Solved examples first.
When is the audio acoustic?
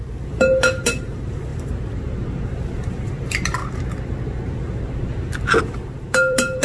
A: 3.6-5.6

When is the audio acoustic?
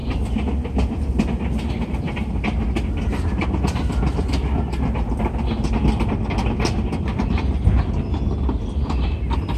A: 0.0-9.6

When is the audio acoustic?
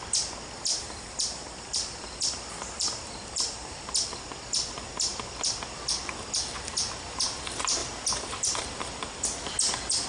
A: 0.0-0.7; 4.2-10.1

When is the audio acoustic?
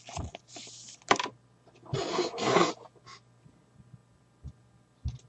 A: 0.0-2.1; 2.7-5.3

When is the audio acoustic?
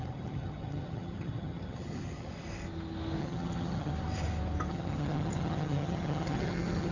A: 2.3-3.2; 3.9-4.7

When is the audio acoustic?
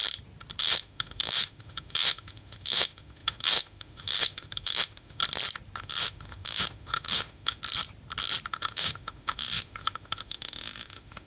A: 0.0-0.6; 5.2-5.8; 7.6-8.5